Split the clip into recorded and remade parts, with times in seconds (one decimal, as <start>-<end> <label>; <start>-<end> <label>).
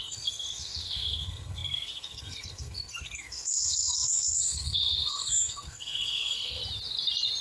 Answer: 0.0-6.6 remade; 6.6-7.4 recorded